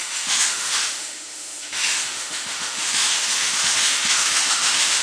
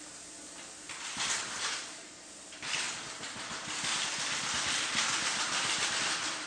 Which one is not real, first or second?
first